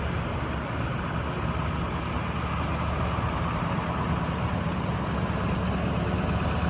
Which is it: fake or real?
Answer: real